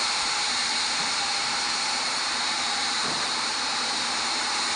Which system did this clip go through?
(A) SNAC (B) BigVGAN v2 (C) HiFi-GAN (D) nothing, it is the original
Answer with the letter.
B